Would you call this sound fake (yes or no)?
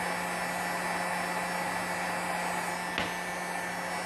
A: no